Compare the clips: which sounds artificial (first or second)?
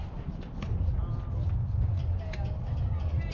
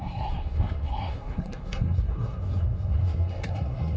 second